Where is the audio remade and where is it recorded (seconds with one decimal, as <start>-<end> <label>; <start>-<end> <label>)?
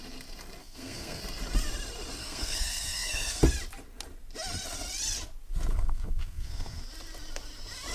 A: 0.0-0.6 recorded; 0.6-1.2 remade; 1.2-2.2 recorded; 2.2-3.4 remade; 3.4-5.7 recorded; 5.7-6.8 remade; 6.8-7.9 recorded